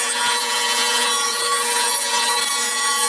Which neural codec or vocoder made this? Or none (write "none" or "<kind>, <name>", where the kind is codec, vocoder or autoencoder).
vocoder, Vocos